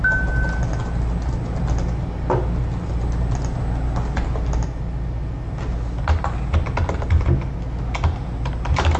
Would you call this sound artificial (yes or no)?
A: no